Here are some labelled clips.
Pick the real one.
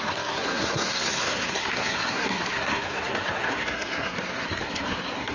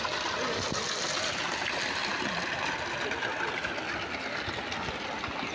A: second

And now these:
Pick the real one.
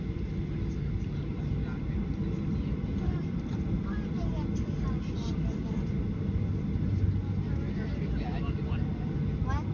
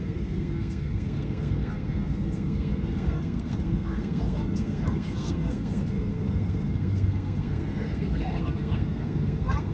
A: first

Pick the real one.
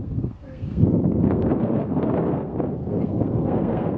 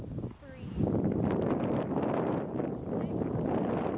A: second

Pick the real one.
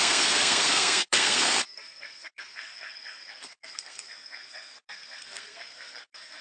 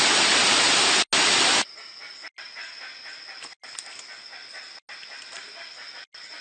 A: second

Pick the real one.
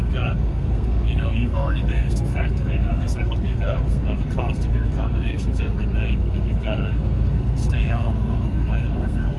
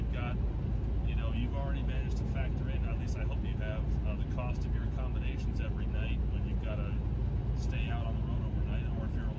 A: second